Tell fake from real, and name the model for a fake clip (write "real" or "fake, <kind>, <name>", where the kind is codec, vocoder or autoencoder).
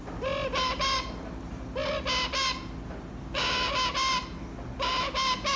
real